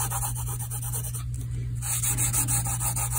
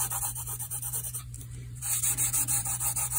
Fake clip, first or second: second